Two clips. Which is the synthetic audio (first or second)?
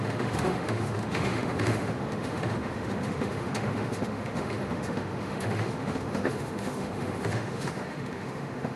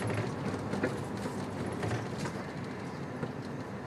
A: first